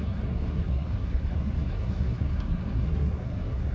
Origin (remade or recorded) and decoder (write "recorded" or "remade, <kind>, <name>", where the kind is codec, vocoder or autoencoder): remade, codec, SNAC